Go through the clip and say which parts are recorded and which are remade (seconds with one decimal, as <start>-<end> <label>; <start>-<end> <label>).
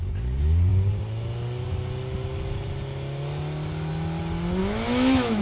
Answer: 0.0-4.6 recorded; 4.6-5.4 remade